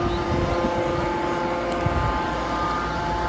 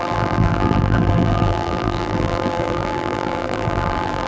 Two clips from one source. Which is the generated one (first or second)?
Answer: second